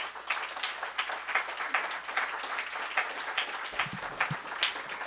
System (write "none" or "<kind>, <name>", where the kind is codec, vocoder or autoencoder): none